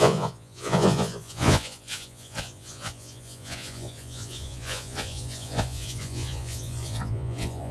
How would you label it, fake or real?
fake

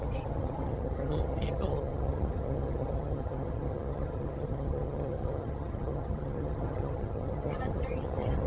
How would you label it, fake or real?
fake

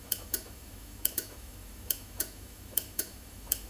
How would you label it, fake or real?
fake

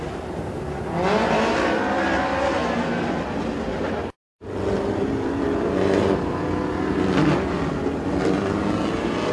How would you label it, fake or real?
real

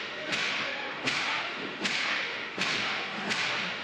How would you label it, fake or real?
fake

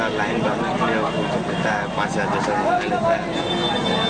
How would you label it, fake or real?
real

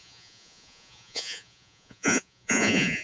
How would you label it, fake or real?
fake